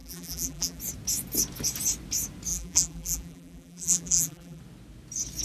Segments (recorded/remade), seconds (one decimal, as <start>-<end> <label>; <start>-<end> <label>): 0.0-0.8 remade; 0.8-2.5 recorded; 2.5-4.6 remade; 4.6-5.4 recorded